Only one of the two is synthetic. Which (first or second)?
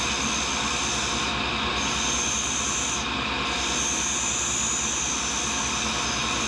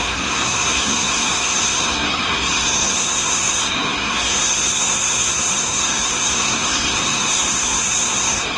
second